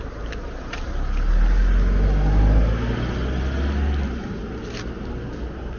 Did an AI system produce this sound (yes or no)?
no